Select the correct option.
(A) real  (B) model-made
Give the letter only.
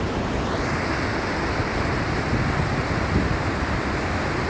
A